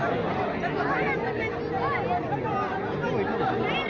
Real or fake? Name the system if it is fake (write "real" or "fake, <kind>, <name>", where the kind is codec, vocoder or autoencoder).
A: real